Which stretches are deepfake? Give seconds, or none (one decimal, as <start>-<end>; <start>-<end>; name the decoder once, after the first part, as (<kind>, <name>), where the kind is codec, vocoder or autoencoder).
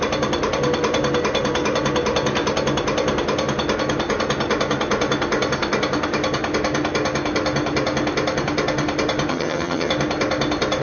9.3-9.9 (vocoder, HiFi-GAN)